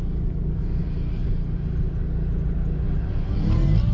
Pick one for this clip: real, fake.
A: real